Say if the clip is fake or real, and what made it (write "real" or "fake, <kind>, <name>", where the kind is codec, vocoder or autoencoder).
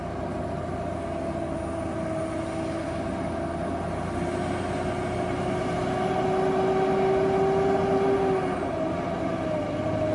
real